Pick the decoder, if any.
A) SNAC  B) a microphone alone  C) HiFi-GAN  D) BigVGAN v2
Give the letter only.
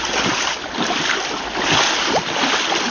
B